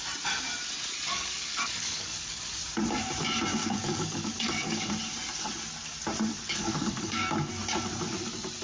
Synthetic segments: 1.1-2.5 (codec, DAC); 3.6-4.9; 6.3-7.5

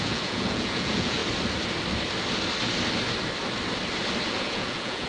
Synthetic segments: 0.0-1.2 (vocoder, Vocos); 4.3-5.1

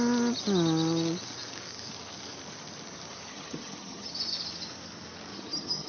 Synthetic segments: 3.3-4.1 (vocoder, HiFi-GAN); 5.3-5.9

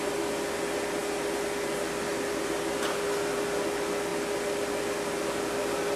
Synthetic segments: none

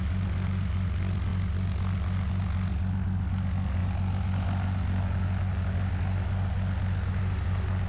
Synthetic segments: none

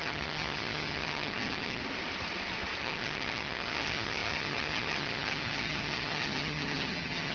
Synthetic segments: 0.0-1.8 (vocoder, HiFi-GAN); 2.8-7.3